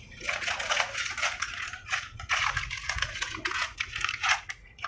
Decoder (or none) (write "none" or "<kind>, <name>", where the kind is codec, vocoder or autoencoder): vocoder, Vocos